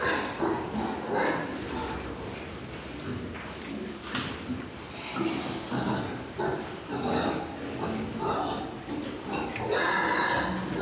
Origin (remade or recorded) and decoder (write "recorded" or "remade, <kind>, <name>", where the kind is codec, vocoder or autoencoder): recorded